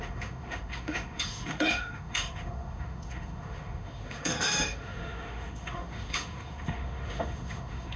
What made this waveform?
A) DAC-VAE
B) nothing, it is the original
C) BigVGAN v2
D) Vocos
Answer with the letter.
A